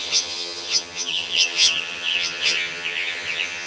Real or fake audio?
fake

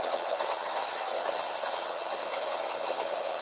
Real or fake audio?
fake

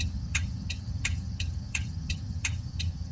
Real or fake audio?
fake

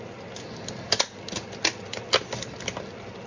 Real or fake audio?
real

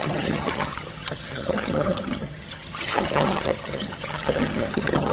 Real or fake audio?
fake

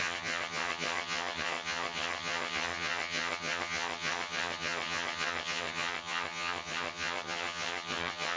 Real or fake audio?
fake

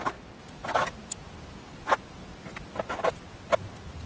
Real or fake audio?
real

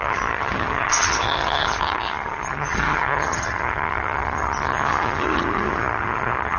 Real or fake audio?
fake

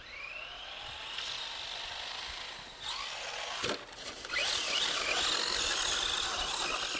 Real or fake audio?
real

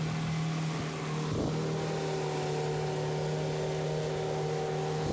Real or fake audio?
real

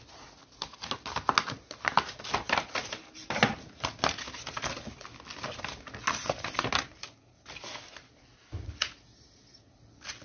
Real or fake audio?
real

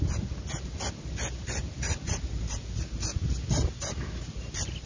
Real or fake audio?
real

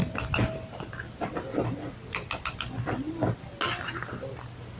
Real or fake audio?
real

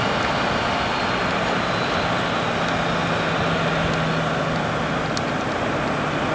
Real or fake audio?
real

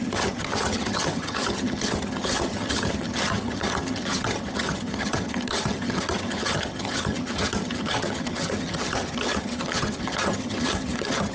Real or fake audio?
fake